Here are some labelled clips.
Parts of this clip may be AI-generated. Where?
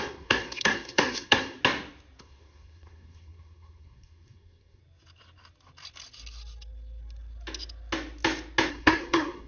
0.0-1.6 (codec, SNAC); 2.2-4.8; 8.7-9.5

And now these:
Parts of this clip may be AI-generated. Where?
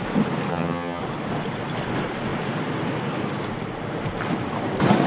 0.5-1.0 (vocoder, HiFi-GAN)